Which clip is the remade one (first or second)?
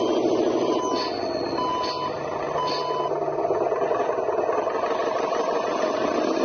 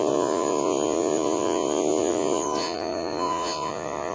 second